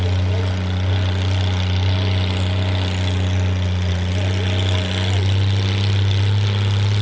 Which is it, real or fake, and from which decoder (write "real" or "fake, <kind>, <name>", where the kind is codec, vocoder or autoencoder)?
real